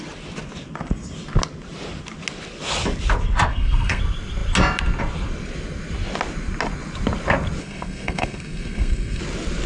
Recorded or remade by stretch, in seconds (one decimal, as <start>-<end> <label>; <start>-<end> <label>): 0.0-3.5 recorded; 3.5-4.0 remade; 4.0-7.6 recorded; 7.6-9.2 remade; 9.2-9.7 recorded